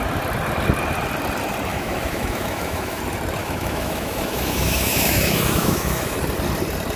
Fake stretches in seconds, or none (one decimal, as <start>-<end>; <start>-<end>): 1.7-3.0; 3.4-6.2